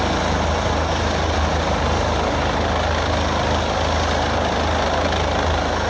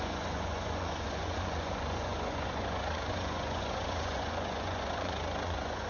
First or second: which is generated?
second